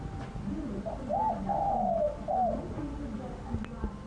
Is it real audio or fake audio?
real